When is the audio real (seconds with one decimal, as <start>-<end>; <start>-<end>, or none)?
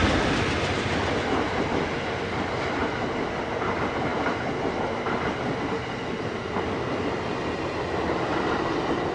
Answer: 0.0-9.1